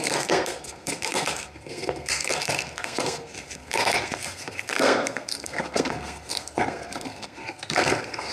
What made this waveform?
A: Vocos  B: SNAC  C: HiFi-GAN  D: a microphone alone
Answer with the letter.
B